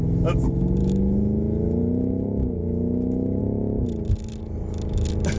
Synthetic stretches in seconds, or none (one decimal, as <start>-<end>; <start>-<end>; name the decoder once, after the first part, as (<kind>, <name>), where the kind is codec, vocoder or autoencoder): 0.8-3.4 (autoencoder, DAC-VAE)